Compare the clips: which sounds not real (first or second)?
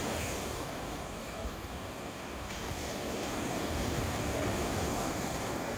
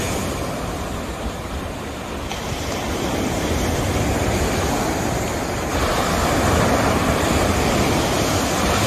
first